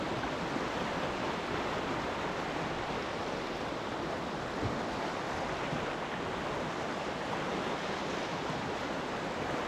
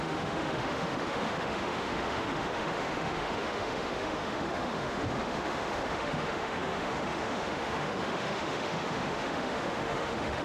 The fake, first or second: second